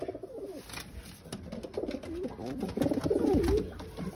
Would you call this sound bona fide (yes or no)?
yes